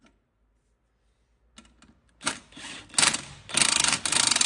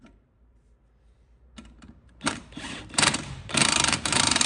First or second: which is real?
first